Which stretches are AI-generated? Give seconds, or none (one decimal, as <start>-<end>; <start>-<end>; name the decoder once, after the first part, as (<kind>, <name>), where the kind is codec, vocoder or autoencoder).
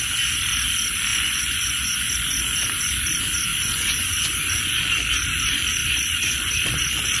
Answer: 1.1-2.1 (vocoder, Vocos); 3.5-4.8; 5.8-6.5